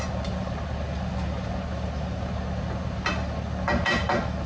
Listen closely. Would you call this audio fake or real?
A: real